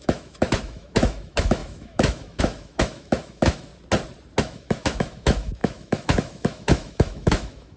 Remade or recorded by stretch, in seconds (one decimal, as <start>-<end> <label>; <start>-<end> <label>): 0.0-3.7 remade; 3.7-4.4 recorded; 4.4-7.8 remade